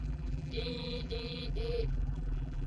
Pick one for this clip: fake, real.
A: fake